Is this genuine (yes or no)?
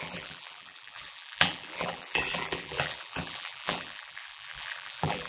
no